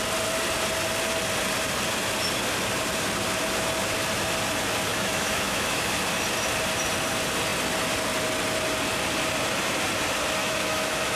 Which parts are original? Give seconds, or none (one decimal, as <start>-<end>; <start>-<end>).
0.0-4.9; 5.9-10.4